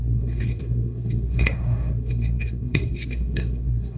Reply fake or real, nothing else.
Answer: fake